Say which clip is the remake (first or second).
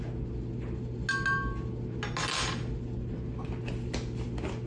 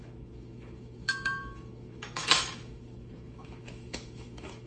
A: second